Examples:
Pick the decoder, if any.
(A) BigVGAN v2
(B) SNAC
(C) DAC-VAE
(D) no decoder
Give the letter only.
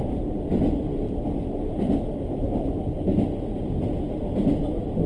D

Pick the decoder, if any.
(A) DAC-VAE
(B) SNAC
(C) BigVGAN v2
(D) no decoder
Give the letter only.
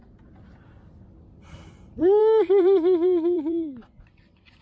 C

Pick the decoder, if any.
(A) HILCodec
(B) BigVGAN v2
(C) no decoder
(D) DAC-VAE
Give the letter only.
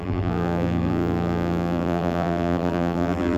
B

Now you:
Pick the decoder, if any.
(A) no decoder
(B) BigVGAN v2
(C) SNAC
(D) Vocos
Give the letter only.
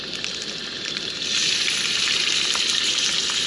B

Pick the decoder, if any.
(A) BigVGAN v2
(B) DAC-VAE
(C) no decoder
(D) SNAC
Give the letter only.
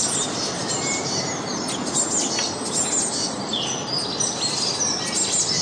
C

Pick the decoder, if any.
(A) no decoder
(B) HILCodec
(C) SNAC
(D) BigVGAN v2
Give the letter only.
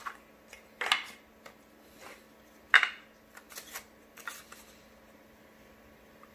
A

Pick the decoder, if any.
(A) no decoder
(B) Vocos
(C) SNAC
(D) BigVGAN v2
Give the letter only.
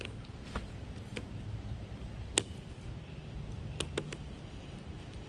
A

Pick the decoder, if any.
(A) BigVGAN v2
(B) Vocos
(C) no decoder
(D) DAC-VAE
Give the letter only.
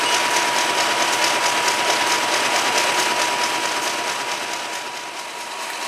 C